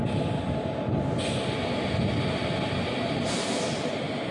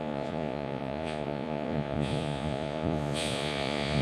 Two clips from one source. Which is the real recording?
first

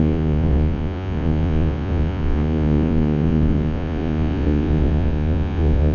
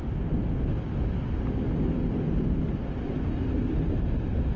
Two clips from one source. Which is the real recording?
second